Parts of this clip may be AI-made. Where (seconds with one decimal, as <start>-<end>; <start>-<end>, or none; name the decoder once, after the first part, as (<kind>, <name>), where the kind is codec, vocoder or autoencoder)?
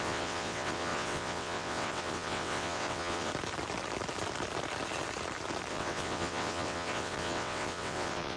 0.0-3.3 (vocoder, WaveNeXt); 5.7-8.4